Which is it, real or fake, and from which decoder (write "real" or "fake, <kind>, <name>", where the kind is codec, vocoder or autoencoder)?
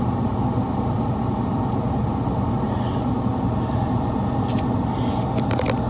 real